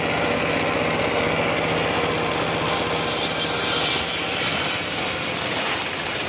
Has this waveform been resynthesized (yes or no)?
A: no